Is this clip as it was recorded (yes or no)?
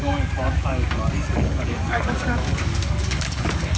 no